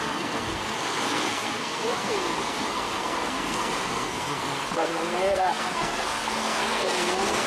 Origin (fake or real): fake